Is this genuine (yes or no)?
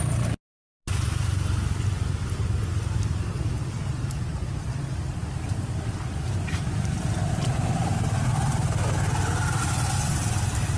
yes